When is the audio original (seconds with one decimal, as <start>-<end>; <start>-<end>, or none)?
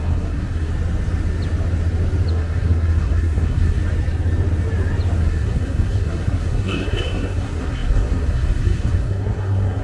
0.7-2.3; 3.8-5.2